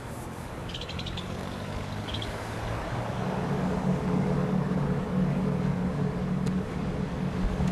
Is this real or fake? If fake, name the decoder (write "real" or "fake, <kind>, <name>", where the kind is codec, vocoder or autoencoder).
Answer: fake, codec, DAC